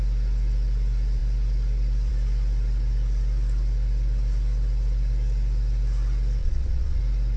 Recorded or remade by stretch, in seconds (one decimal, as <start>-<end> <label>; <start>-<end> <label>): 0.0-6.4 recorded; 6.4-7.0 remade; 7.0-7.4 recorded